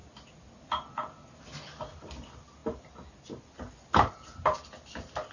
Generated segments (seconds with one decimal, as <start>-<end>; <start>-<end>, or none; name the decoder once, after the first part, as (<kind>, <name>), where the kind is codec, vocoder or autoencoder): none